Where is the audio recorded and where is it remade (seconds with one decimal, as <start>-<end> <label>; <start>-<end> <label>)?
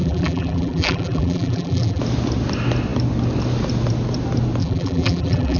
0.0-2.0 remade; 2.0-4.6 recorded; 4.6-5.6 remade